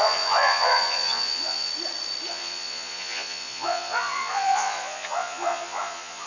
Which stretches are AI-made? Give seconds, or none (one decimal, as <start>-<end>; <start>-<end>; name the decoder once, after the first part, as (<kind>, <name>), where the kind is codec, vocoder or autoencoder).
0.0-1.7 (vocoder, Vocos); 2.3-6.3